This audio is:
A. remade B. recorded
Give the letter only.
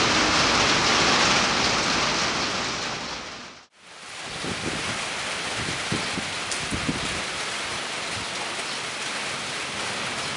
B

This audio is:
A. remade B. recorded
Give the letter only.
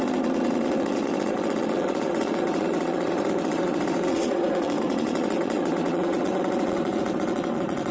A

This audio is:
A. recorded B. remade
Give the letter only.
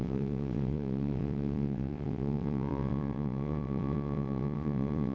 B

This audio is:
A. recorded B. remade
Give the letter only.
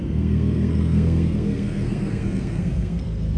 B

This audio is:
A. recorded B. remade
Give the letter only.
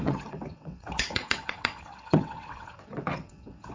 B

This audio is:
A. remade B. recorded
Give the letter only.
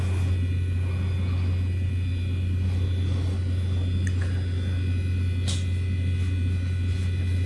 B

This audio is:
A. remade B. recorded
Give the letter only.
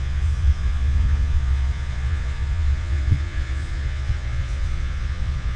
A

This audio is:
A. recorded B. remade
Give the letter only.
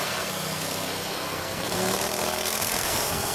B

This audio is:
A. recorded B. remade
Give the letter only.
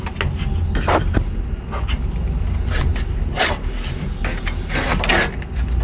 A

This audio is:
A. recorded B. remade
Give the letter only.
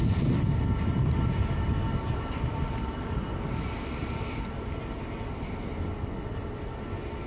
A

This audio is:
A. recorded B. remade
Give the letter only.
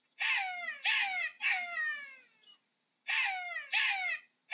A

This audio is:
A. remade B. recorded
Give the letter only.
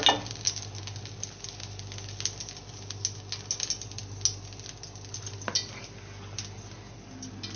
B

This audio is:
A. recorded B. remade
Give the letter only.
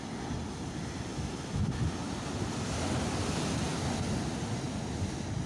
A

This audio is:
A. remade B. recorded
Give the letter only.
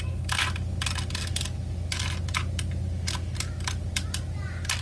B